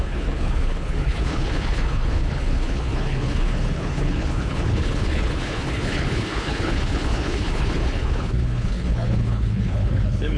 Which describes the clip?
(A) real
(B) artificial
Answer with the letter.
B